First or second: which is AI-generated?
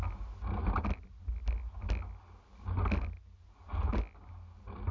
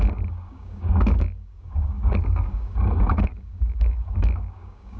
second